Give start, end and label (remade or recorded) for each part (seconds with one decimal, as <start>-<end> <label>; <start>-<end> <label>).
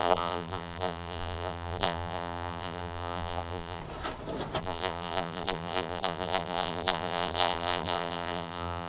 0.0-3.8 remade; 3.8-4.6 recorded; 4.6-8.9 remade